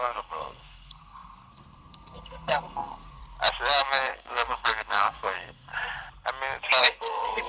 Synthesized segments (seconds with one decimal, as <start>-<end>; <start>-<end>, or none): 0.0-3.2; 3.8-5.7; 6.8-7.5